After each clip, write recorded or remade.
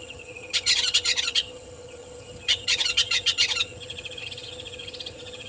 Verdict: remade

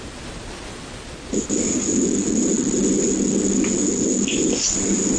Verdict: recorded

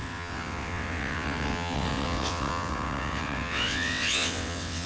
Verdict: remade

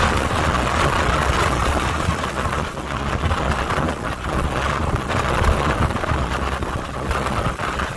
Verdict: remade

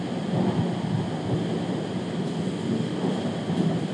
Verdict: recorded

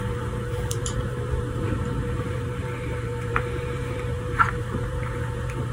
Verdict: remade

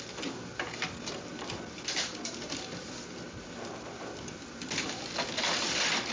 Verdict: recorded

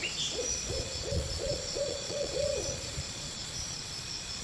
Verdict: remade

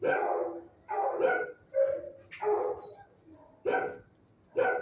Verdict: recorded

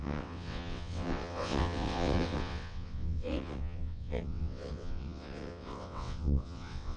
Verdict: remade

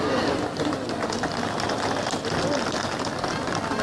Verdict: recorded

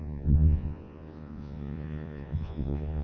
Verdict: remade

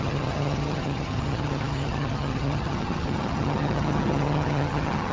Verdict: remade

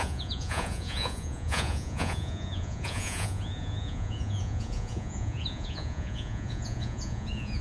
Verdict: remade